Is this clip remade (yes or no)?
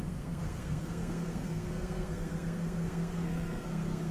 yes